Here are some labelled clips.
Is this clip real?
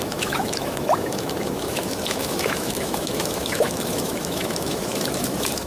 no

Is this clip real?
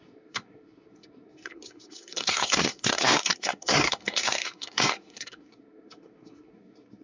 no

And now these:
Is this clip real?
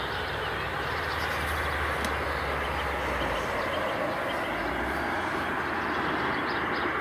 yes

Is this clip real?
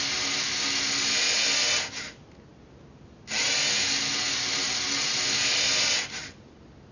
yes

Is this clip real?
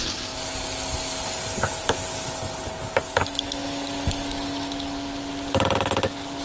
yes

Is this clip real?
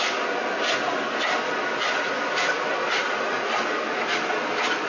yes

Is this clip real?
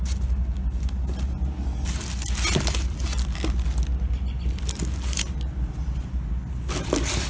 yes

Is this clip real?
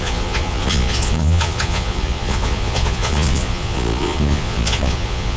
no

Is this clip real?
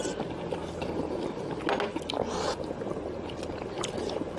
yes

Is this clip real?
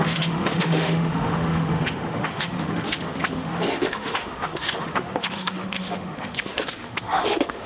no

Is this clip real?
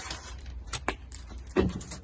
no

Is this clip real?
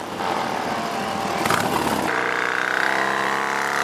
yes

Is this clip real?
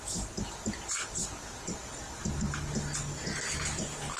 yes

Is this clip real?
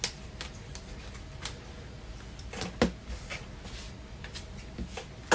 yes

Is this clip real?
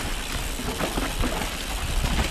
yes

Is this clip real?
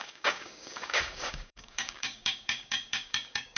no